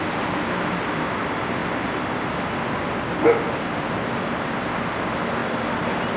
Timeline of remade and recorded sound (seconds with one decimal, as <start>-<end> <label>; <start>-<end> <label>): 0.0-1.6 recorded; 1.6-3.8 remade; 3.8-5.4 recorded; 5.4-6.2 remade